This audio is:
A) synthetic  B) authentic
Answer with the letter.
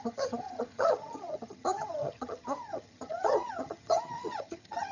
A